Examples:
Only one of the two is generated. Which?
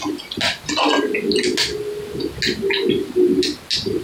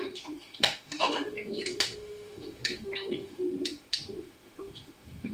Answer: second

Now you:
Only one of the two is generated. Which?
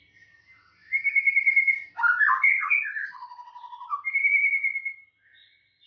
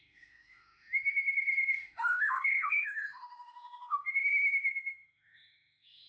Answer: second